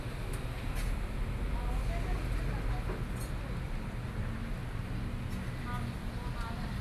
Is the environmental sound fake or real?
real